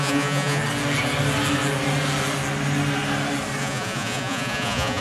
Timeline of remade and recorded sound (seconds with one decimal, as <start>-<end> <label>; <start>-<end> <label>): 0.0-0.6 remade; 0.6-3.6 recorded; 3.6-5.0 remade